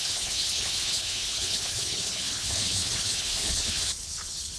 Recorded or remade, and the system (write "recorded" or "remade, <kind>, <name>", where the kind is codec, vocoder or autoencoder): remade, codec, HILCodec